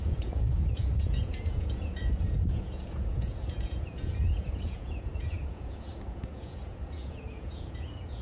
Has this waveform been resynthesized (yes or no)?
yes